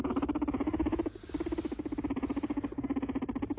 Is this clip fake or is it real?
real